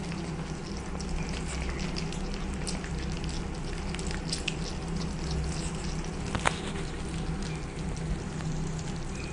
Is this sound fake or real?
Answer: real